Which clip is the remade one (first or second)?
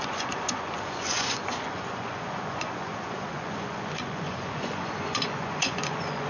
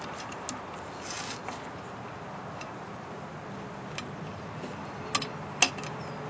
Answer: first